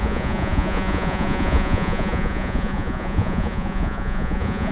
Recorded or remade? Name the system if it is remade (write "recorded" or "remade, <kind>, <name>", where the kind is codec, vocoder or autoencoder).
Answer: remade, vocoder, Vocos